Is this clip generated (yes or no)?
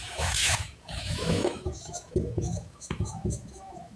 yes